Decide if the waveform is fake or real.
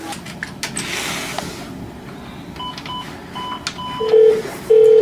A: real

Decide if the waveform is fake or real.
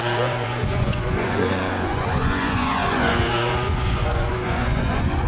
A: fake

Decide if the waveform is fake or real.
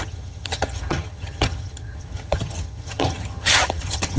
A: fake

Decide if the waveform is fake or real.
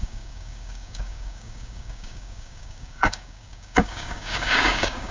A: fake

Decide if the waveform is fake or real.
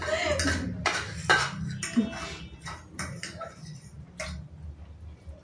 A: real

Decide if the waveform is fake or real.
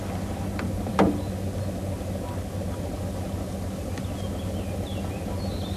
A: real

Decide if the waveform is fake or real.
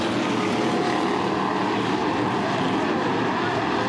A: real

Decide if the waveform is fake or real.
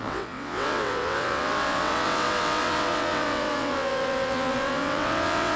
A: fake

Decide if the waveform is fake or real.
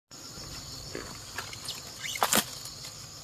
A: real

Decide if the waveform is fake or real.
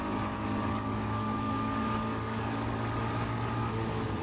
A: fake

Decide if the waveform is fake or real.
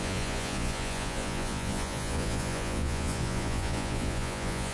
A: fake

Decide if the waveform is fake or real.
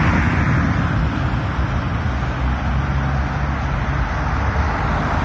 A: real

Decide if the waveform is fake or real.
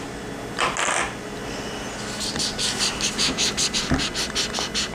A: real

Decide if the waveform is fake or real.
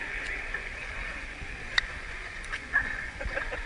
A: fake